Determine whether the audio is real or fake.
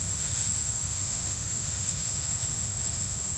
fake